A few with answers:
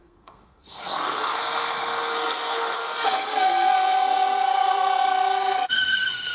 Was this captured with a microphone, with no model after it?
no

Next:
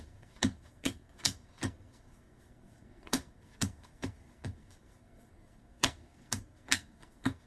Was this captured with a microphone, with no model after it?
no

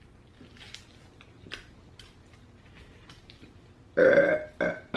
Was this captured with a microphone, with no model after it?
yes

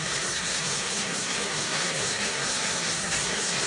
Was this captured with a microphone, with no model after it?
no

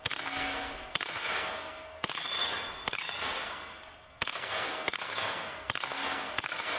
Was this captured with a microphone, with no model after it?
no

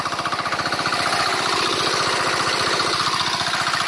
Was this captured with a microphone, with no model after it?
yes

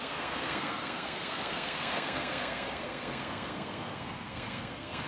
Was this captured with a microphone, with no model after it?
no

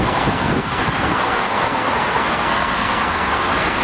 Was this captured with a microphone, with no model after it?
no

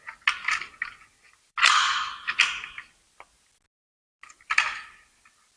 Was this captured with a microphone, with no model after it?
yes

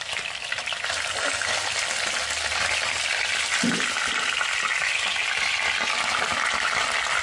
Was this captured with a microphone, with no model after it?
yes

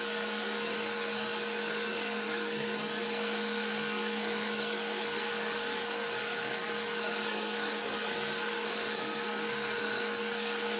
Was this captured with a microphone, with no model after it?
no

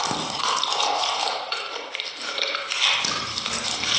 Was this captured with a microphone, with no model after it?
yes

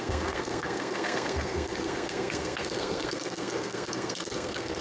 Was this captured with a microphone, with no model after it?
no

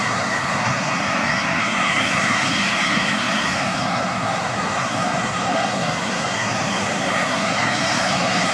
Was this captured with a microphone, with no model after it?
no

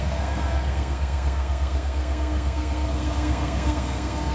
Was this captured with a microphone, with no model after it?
no